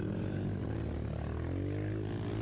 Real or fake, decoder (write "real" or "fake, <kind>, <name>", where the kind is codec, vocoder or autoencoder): real